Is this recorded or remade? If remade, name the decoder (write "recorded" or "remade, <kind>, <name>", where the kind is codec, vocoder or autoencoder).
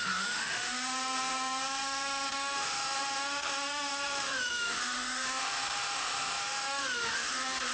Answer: remade, autoencoder, DAC-VAE